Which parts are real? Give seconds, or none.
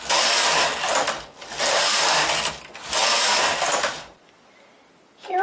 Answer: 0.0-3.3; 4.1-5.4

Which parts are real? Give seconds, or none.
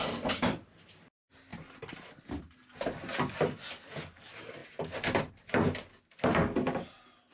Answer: 0.0-7.3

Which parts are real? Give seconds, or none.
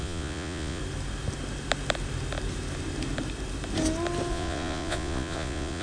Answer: 0.8-4.3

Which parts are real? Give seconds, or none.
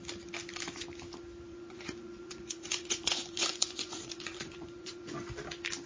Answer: 0.0-1.5; 5.0-5.9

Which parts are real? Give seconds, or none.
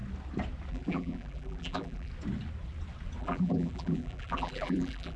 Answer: 0.0-0.7; 2.1-3.2